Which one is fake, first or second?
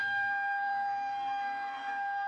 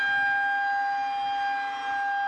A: first